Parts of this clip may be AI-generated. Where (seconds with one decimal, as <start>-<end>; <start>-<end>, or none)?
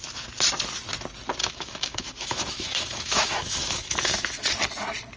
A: 1.4-4.3